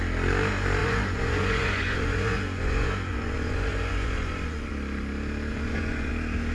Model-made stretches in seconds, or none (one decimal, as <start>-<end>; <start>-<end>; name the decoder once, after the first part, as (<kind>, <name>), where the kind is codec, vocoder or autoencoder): 0.8-4.7 (vocoder, Vocos); 5.5-6.1